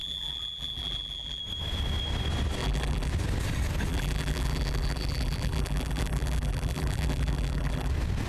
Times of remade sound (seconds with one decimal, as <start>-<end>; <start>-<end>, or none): 0.0-1.4; 2.6-3.1; 3.9-7.9